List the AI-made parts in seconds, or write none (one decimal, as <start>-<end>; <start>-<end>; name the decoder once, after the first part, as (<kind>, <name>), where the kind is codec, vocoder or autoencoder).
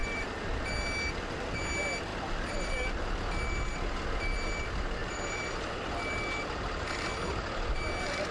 0.0-0.6 (vocoder, BigVGAN v2); 2.1-2.7; 5.0-5.7